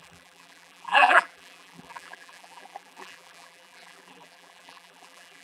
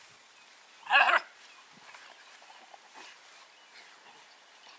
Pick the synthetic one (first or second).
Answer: first